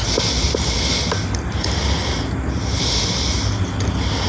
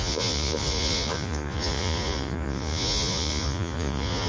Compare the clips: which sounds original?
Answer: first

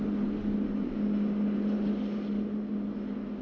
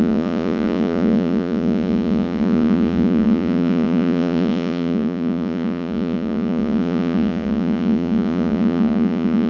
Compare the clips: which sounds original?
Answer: first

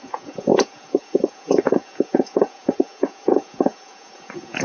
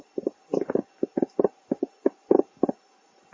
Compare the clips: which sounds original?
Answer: second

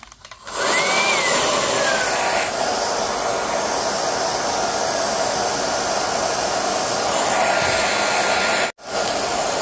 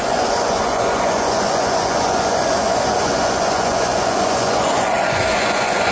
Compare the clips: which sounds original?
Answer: first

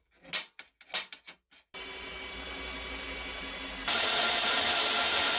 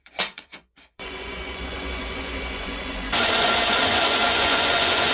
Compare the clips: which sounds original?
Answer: first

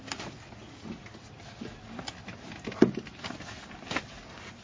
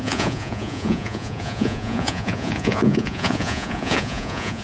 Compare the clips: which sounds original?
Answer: first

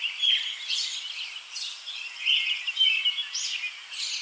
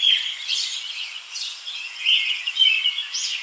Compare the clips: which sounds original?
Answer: first